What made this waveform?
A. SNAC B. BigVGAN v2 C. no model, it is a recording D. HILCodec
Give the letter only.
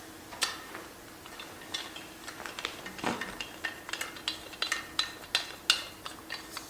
C